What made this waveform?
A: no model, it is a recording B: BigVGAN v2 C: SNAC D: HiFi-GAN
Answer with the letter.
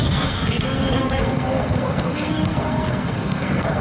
C